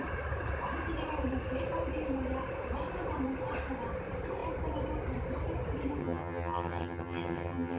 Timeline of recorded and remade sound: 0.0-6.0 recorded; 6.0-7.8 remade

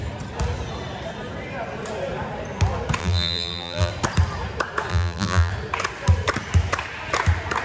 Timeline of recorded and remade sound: 0.0-3.0 recorded; 3.0-3.9 remade; 3.9-4.9 recorded; 4.9-5.5 remade; 5.5-7.6 recorded

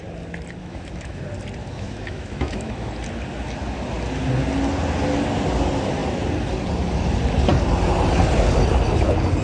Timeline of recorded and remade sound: 0.0-0.6 recorded; 0.6-1.2 remade; 1.2-1.6 recorded; 1.6-2.9 remade; 2.9-9.4 recorded

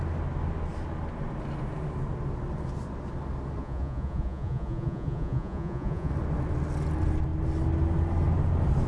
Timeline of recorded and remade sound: 0.0-3.6 recorded; 3.6-6.1 remade; 6.1-8.9 recorded